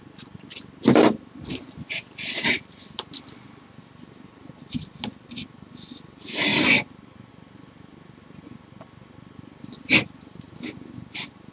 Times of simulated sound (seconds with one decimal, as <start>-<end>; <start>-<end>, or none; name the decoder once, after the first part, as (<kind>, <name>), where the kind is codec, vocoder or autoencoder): none

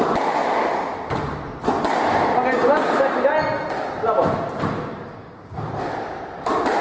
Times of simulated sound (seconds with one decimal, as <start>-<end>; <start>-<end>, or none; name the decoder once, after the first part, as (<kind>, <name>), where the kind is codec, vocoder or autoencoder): 5.2-5.7 (codec, DAC)

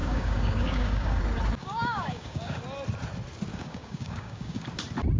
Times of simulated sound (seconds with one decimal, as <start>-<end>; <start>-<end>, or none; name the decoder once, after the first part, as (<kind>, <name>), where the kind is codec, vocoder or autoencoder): 0.0-1.2 (codec, DAC); 1.6-2.6; 3.5-4.7

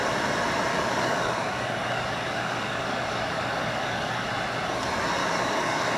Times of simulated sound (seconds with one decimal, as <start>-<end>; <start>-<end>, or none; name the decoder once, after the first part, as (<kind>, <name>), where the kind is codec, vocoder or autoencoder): 0.7-4.3 (codec, DAC); 5.2-6.0

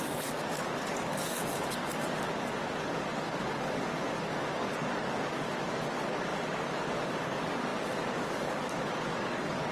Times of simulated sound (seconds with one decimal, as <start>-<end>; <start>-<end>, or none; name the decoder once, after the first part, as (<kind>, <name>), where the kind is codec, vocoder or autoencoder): 0.0-9.7 (codec, DAC)

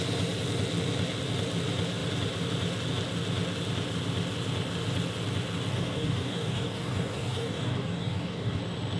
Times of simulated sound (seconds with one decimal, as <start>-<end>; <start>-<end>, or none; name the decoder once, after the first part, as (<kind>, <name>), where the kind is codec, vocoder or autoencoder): 5.7-8.6 (codec, DAC)

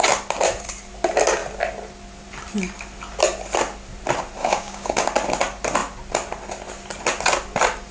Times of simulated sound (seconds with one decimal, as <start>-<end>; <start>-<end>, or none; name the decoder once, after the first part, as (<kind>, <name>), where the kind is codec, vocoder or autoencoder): 4.4-5.0 (codec, DAC)